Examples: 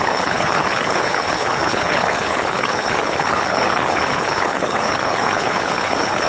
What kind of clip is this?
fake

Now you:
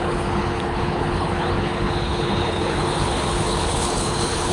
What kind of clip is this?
fake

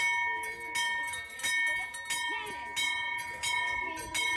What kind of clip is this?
real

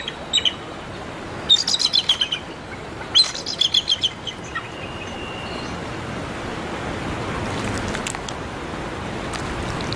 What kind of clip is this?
real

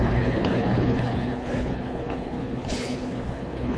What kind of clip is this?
fake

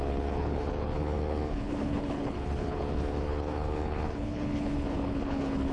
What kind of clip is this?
fake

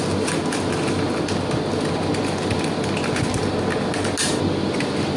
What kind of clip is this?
real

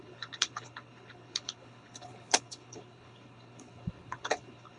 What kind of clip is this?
fake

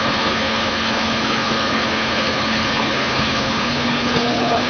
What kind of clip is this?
fake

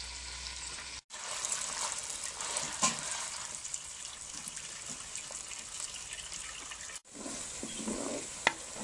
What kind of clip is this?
real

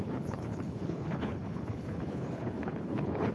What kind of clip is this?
fake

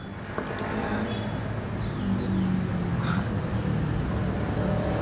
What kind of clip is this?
real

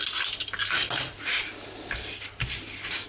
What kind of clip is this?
real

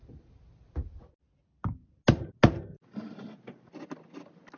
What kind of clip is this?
real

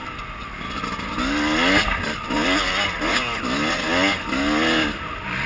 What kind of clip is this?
real